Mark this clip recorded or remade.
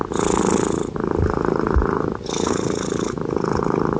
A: recorded